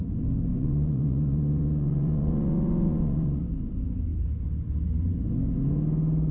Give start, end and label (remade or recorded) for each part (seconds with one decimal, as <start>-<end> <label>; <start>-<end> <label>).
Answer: 0.0-0.5 recorded; 0.5-3.4 remade; 3.4-6.3 recorded